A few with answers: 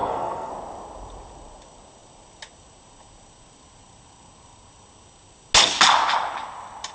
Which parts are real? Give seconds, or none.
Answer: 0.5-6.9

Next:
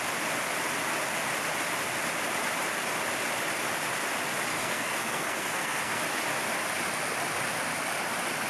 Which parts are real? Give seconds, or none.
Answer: 0.0-4.5; 6.0-8.5

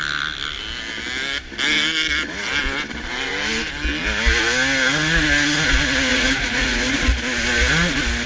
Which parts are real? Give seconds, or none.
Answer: 0.0-6.1; 7.1-8.3